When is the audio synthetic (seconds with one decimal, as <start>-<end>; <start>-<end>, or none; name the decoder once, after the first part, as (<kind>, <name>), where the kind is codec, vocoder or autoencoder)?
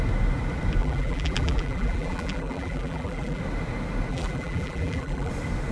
0.8-3.4 (vocoder, BigVGAN v2); 4.1-5.3